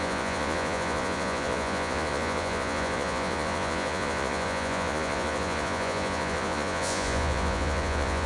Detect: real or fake fake